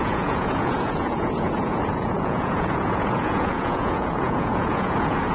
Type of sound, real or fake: fake